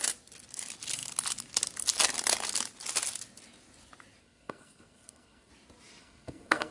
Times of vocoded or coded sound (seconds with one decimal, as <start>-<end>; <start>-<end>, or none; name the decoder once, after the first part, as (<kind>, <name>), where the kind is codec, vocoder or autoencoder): 4.2-5.5 (codec, SNAC); 6.0-6.7